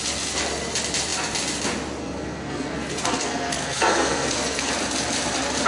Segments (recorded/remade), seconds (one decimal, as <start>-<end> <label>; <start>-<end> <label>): 0.0-2.0 recorded; 2.0-4.7 remade; 4.7-5.7 recorded